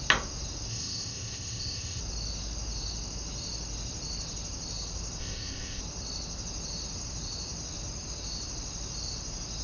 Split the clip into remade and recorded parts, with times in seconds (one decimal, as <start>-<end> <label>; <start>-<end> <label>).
0.0-0.7 recorded; 0.7-2.0 remade; 2.0-5.2 recorded; 5.2-5.8 remade; 5.8-9.6 recorded